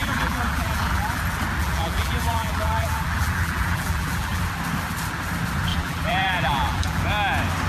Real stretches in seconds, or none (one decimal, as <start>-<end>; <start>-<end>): 1.2-1.6; 4.4-5.7; 7.0-7.7